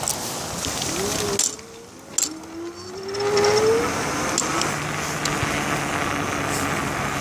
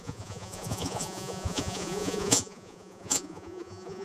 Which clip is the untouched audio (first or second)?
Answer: first